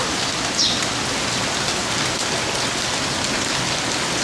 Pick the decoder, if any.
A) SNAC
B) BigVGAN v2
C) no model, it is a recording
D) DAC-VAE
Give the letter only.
C